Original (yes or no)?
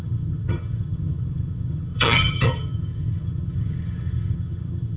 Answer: no